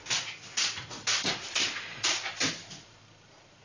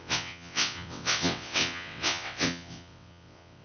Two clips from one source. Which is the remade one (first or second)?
second